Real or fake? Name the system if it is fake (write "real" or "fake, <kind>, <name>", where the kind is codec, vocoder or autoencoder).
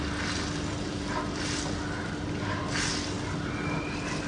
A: real